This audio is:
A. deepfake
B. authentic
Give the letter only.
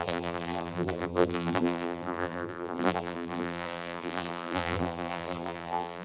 A